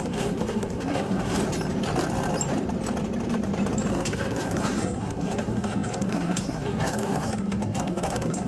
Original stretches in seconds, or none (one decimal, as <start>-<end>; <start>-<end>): 1.4-3.9